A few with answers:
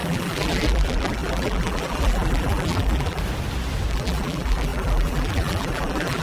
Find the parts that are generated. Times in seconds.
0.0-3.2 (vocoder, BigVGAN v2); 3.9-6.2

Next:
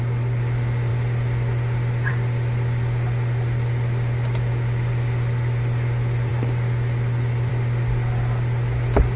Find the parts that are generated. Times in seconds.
none